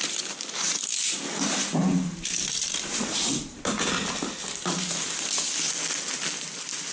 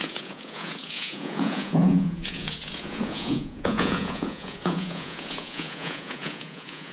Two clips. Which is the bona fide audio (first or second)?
first